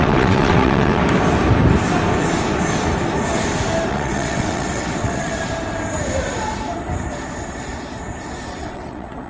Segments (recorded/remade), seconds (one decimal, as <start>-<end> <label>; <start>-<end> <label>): 0.0-1.0 remade; 1.0-3.9 recorded; 3.9-5.3 remade; 5.3-8.5 recorded; 8.5-9.3 remade